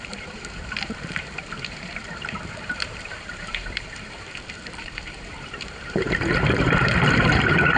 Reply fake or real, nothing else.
fake